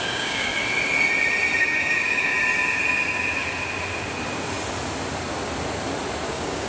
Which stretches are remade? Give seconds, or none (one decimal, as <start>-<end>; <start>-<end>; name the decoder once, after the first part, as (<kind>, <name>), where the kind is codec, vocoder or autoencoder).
0.0-0.5 (codec, DAC); 1.6-2.3; 6.3-6.7